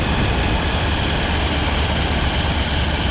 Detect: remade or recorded recorded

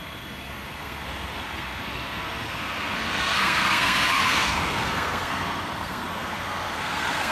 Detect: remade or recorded remade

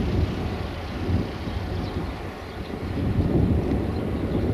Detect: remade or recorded recorded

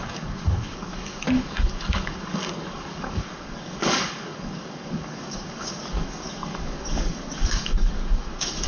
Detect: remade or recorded remade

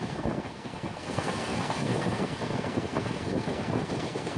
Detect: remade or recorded remade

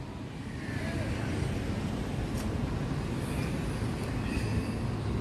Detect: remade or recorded recorded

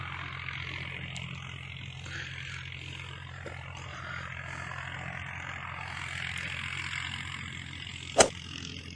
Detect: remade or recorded recorded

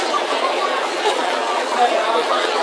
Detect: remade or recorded remade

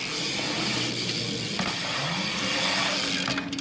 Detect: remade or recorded recorded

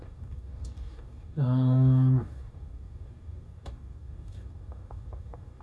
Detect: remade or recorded remade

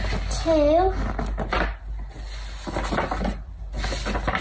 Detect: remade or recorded recorded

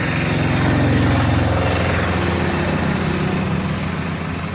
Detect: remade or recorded recorded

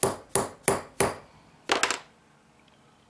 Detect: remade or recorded recorded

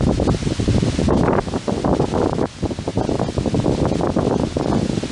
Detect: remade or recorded recorded